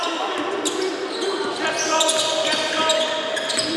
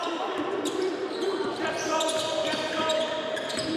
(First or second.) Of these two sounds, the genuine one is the first